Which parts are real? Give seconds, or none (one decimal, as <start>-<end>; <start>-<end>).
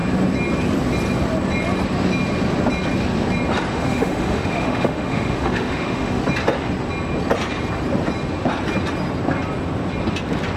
0.0-3.7; 6.2-10.6